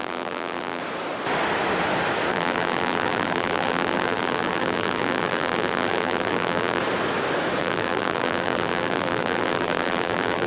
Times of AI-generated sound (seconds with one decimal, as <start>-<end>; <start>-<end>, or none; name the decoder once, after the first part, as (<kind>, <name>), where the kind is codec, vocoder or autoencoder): 0.0-0.8 (vocoder, BigVGAN v2); 2.3-6.8; 7.6-10.5